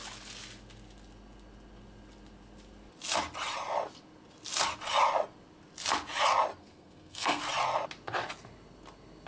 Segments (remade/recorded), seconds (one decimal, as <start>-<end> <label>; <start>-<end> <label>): 0.0-6.6 recorded; 6.6-7.4 remade; 7.4-9.3 recorded